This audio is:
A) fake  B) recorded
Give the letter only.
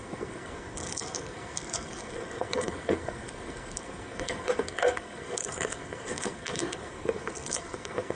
A